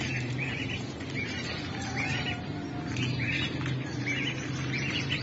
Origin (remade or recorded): remade